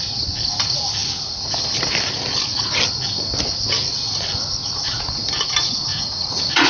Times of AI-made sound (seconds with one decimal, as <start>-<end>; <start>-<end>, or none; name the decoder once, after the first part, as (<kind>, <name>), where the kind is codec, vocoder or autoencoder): 4.6-5.1 (vocoder, Vocos); 5.9-6.7